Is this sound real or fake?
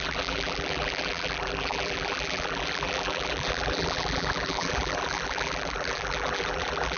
fake